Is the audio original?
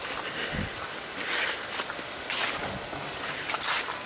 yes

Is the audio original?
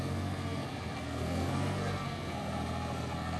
no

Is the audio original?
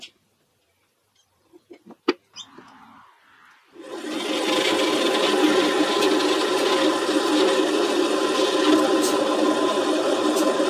yes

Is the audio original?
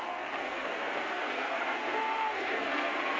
no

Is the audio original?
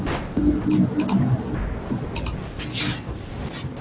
yes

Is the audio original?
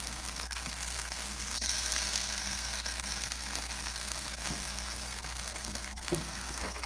no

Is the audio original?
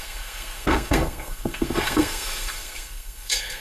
no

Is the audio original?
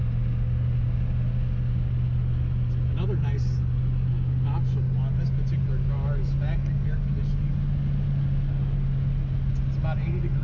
yes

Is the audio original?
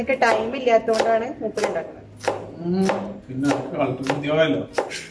yes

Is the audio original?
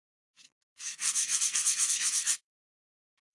no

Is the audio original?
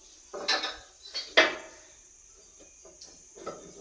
yes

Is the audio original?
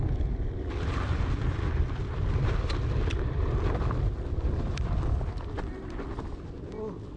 yes